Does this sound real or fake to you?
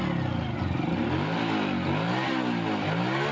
real